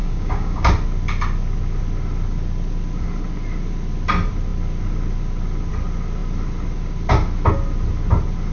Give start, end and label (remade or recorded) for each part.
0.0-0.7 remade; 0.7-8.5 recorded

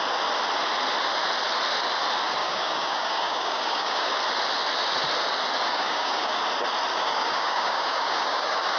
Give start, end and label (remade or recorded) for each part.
0.0-2.4 recorded; 2.4-4.1 remade; 4.1-5.7 recorded; 5.7-6.4 remade; 6.4-6.9 recorded; 6.9-8.8 remade

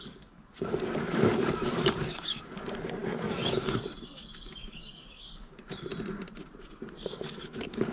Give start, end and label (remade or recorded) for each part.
0.0-5.9 remade; 5.9-6.6 recorded; 6.6-7.9 remade

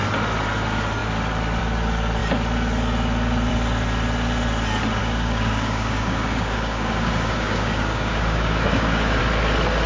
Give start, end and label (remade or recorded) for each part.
0.0-5.0 recorded; 5.0-9.2 remade; 9.2-9.9 recorded

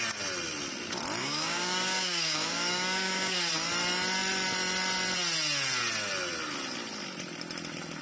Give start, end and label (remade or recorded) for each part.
0.0-1.2 recorded; 1.2-3.5 remade; 3.5-8.0 recorded

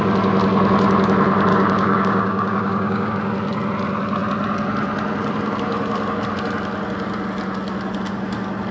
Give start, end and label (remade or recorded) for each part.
0.0-1.5 recorded; 1.5-3.1 remade; 3.1-8.7 recorded